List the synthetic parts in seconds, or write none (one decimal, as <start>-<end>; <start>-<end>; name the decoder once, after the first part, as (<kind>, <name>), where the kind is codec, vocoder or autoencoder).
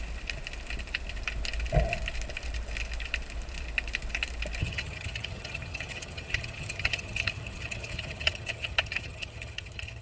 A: 4.6-10.0 (vocoder, HiFi-GAN)